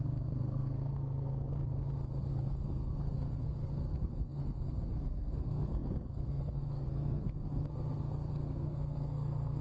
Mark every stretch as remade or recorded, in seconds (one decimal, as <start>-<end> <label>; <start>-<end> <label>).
0.0-1.5 remade; 1.5-2.3 recorded; 2.3-9.6 remade